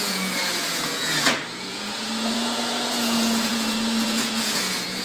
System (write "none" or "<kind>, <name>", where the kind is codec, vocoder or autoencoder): vocoder, Vocos